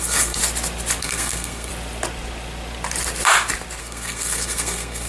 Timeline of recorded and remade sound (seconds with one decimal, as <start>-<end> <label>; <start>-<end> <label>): 0.0-0.4 remade; 0.4-1.0 recorded; 1.0-1.7 remade; 1.7-3.8 recorded; 3.8-5.1 remade